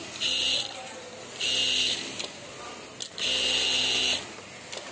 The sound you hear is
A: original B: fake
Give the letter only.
A